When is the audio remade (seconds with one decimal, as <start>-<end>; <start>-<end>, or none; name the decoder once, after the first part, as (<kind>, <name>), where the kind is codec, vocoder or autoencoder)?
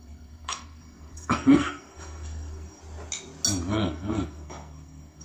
0.0-2.8 (codec, SNAC); 3.7-5.2